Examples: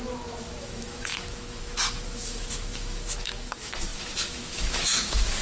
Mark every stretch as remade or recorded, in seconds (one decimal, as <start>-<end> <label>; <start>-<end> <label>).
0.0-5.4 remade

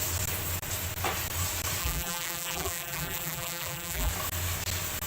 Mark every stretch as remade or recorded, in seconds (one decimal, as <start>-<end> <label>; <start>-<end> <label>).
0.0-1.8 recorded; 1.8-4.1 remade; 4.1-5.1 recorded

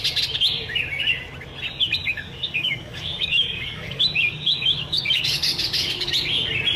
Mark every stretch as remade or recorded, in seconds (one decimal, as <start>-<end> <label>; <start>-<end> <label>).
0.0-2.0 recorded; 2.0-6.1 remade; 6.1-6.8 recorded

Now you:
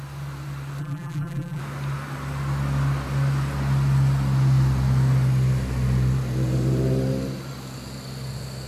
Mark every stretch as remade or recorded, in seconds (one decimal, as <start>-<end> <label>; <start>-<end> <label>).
0.0-0.8 recorded; 0.8-1.6 remade; 1.6-8.7 recorded